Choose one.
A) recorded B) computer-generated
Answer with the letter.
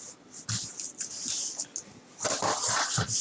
A